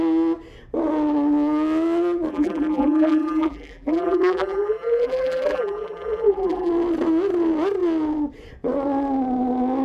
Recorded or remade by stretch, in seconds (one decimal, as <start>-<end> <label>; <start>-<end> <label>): 0.0-2.3 recorded; 2.3-6.7 remade; 6.7-9.8 recorded